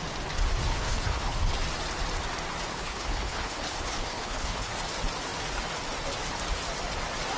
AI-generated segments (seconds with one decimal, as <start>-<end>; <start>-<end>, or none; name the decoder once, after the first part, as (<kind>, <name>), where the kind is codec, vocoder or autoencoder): 0.7-1.5 (codec, HILCodec); 2.7-4.7